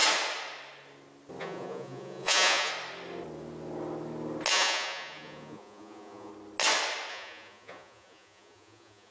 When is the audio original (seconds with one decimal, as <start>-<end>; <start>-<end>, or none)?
0.0-1.4; 2.7-4.5; 6.3-7.1